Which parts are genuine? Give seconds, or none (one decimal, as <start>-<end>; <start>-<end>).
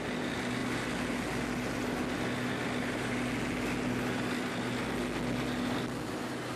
0.0-6.6